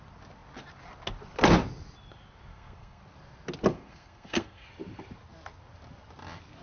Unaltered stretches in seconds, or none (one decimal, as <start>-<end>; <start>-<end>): 0.0-2.5; 3.0-3.7; 4.7-6.6